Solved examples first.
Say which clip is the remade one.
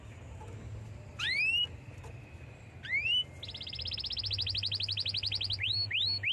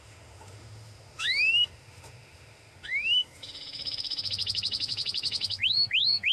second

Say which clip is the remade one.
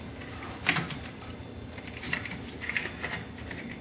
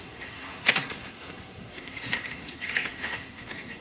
second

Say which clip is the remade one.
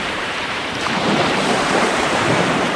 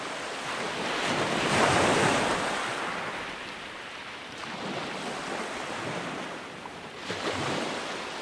first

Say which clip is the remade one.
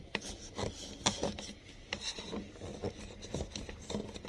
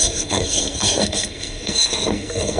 second